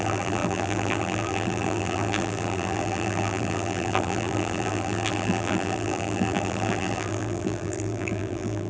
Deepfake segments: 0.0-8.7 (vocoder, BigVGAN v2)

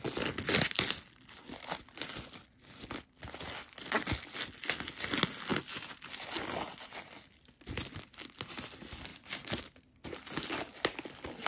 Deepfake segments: none

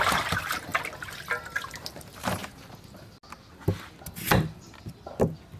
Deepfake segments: 0.0-0.7 (vocoder, BigVGAN v2); 1.9-2.4

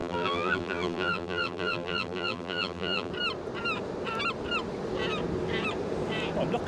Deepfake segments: 0.0-3.1 (vocoder, BigVGAN v2)

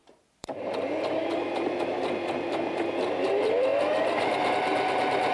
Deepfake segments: 0.0-2.9 (vocoder, BigVGAN v2)

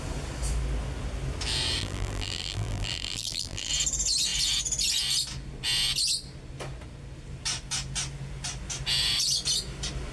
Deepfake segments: 1.8-3.7 (vocoder, BigVGAN v2)

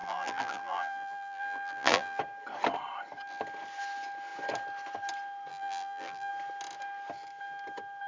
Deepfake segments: 0.0-2.2 (vocoder, BigVGAN v2); 5.5-6.3

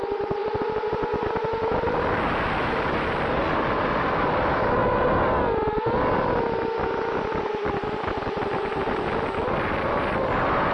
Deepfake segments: 0.0-1.1 (vocoder, BigVGAN v2); 3.4-4.8; 5.9-10.7